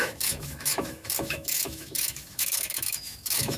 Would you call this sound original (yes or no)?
no